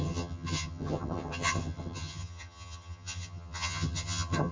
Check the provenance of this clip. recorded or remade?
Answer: remade